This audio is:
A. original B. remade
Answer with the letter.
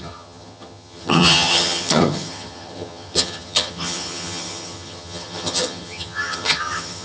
B